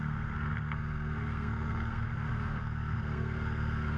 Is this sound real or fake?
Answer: fake